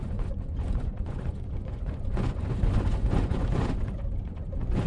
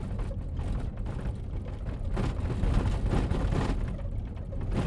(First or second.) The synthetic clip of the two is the first